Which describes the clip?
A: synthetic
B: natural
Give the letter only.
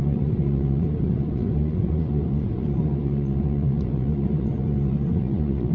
A